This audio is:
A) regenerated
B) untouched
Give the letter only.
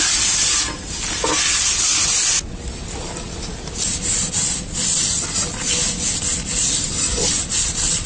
B